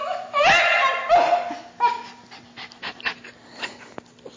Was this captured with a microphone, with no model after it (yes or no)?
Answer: yes